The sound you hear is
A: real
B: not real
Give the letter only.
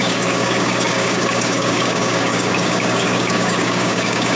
B